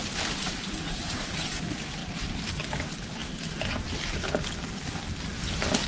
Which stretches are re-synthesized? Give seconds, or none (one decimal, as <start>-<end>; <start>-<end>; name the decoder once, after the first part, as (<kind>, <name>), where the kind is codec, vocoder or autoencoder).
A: none